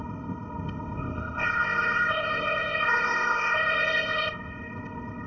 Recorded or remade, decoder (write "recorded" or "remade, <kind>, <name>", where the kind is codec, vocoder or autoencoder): remade, codec, ZipCodec